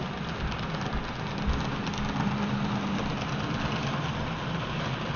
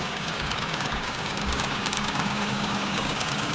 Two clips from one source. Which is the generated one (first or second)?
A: second